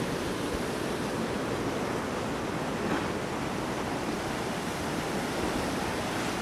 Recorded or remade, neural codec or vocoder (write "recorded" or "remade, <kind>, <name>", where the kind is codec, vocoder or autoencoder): recorded